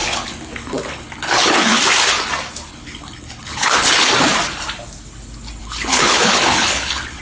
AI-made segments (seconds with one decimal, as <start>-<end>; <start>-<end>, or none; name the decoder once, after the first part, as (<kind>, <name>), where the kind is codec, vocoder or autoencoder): 0.0-1.8 (codec, HILCodec); 2.7-4.1; 5.6-7.2